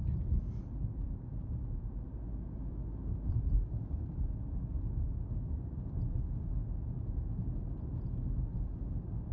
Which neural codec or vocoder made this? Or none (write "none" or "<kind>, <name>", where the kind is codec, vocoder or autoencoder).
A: none